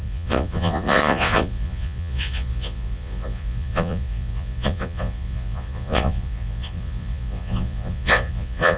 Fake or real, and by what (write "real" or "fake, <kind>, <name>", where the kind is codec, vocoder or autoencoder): fake, vocoder, Vocos